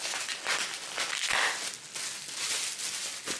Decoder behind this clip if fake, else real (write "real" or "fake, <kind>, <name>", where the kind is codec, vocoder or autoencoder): real